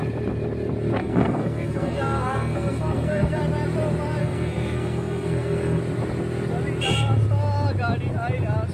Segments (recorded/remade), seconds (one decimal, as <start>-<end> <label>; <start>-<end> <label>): 0.0-1.0 recorded; 1.0-3.4 remade; 3.4-4.2 recorded; 4.2-5.8 remade; 5.8-8.7 recorded